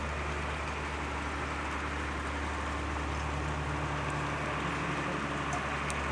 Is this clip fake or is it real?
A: real